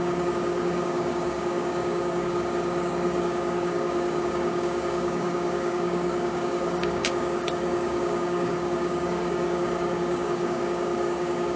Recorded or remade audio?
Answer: remade